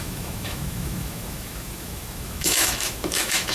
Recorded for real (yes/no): no